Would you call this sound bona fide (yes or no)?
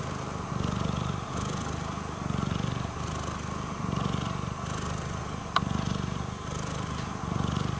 yes